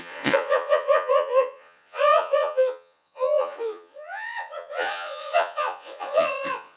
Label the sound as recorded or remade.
remade